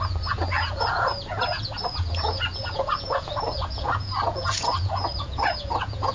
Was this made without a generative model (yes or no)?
no